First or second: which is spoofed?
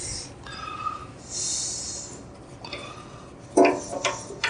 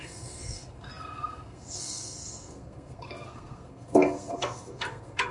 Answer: second